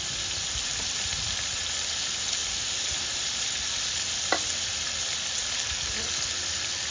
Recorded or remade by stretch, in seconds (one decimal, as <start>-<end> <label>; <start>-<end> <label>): 0.0-6.9 recorded